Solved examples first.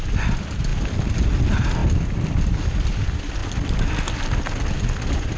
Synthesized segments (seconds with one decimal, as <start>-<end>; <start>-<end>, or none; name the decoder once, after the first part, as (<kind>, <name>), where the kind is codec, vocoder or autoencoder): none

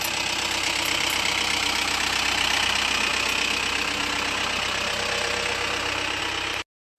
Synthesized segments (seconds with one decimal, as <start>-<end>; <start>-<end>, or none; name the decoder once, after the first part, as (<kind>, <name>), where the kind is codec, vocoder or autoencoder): none

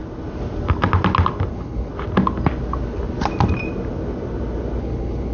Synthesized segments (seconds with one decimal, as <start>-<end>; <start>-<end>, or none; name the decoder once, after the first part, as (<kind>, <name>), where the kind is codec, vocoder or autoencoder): 1.5-1.9 (codec, HILCodec); 4.8-5.3